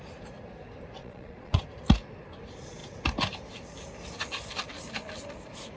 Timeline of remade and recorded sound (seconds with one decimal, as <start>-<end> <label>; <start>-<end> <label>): 0.0-1.0 recorded; 1.0-1.6 remade; 1.6-5.8 recorded